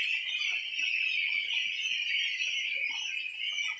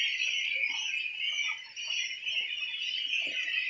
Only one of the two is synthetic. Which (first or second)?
first